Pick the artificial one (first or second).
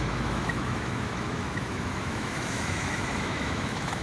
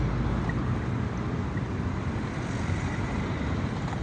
first